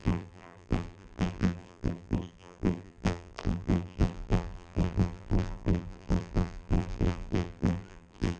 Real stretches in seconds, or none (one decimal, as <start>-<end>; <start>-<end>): none